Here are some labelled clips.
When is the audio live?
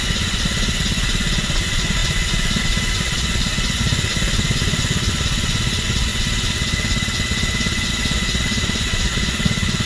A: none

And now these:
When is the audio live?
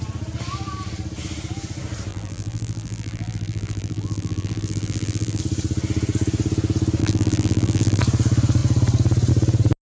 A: 0.0-2.1; 5.4-7.0; 8.0-9.9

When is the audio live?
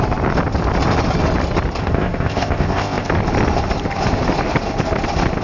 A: 0.0-1.8; 3.1-5.4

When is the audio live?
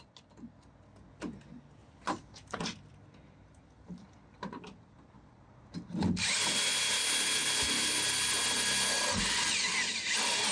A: 0.0-1.8; 6.3-10.5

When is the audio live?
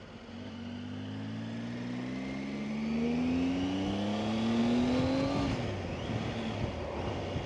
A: 0.0-7.5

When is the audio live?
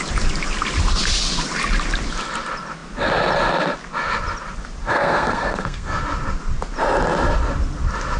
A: 0.0-4.8; 6.0-8.2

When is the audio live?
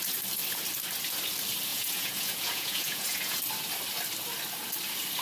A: 0.0-1.7; 3.4-5.2